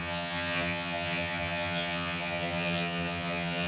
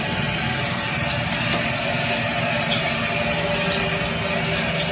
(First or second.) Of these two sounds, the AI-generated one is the first